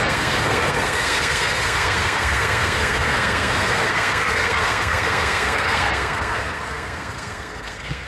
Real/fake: fake